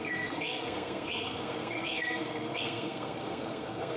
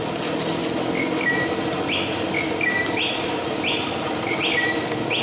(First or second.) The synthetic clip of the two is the first